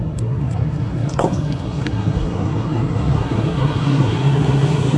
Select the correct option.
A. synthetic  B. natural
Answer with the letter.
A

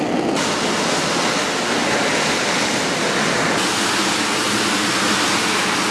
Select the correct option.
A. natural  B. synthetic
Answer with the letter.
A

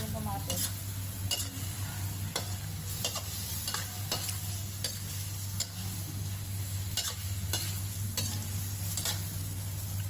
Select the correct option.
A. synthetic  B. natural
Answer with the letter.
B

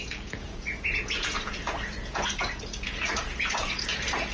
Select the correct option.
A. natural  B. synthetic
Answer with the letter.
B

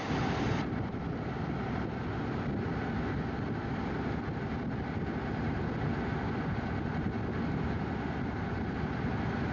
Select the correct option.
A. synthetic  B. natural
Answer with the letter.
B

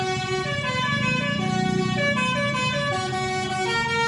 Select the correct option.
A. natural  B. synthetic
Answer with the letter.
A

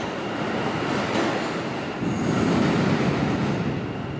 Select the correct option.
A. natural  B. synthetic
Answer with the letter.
A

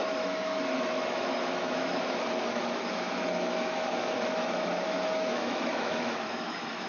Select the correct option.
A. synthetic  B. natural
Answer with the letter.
A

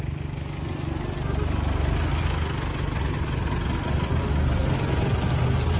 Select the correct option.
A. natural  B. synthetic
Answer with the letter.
A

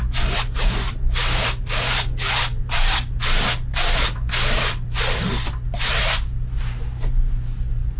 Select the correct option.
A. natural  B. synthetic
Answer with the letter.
A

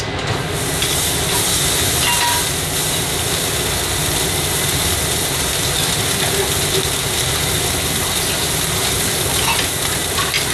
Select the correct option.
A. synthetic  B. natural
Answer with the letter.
B